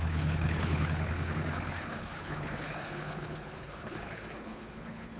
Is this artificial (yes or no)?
yes